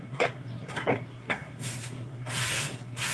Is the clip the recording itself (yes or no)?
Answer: no